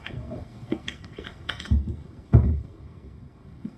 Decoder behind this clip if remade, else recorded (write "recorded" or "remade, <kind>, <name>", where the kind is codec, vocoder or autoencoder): remade, codec, SNAC